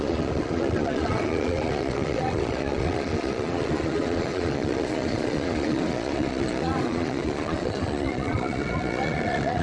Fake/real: fake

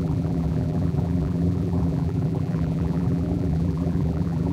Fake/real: fake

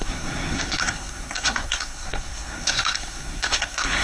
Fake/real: fake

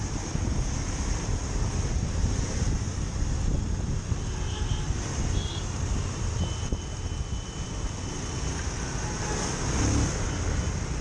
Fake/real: real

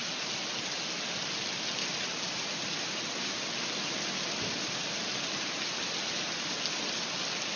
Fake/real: real